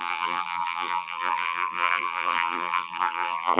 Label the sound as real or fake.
fake